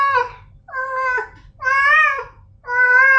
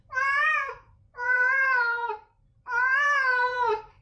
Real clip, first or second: first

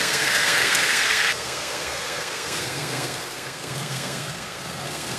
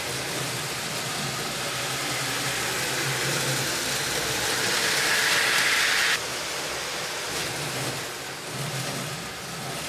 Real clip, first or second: second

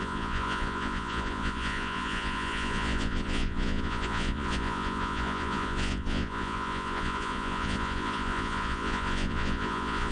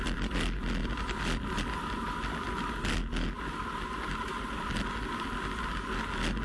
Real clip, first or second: second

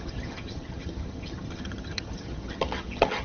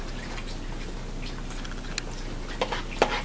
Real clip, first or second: second